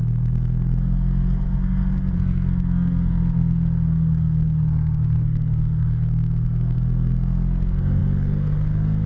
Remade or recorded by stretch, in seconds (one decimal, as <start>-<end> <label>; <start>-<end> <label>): 0.0-9.1 remade